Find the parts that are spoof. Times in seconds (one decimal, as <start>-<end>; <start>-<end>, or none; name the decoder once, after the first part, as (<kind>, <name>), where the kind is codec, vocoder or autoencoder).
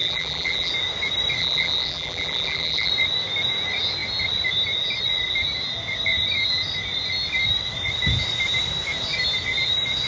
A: 0.0-0.7 (vocoder, BigVGAN v2); 1.4-2.9